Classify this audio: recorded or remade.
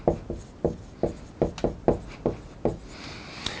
recorded